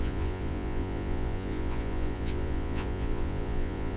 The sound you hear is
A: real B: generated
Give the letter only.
B